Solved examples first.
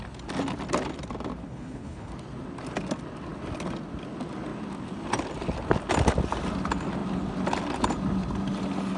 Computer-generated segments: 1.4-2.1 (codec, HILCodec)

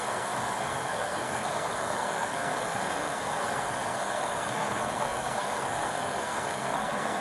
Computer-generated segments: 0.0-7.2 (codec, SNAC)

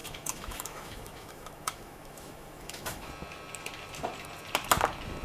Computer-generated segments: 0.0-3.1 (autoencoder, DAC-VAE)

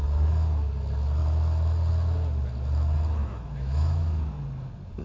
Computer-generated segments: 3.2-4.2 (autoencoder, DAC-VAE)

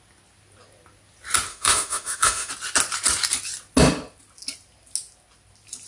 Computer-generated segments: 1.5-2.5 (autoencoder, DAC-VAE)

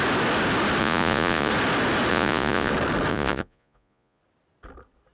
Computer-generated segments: 0.8-1.5 (vocoder, Vocos); 2.1-2.7; 3.1-4.2

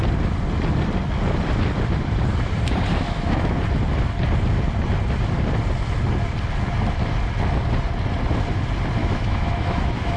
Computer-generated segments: 2.9-3.6 (autoencoder, DAC-VAE); 9.0-10.2